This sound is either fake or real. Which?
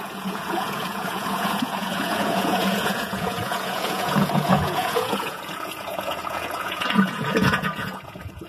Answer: fake